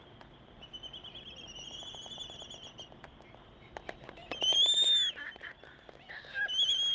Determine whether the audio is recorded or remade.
recorded